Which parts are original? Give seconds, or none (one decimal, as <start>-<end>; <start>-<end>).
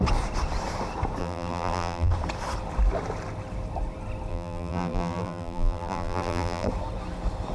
0.0-1.2; 2.1-4.3; 6.7-7.5